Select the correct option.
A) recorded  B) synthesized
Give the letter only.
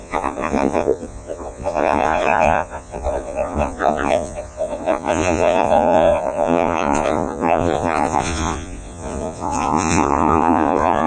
B